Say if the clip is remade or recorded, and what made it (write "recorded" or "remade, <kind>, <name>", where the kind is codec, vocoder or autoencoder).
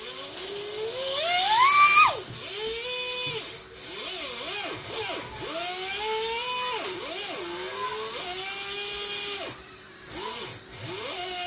recorded